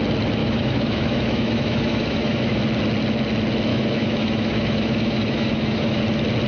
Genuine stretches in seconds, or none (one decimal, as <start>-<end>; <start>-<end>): 0.0-0.4; 2.6-3.7; 6.0-6.5